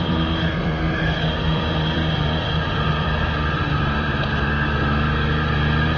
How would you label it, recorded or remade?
remade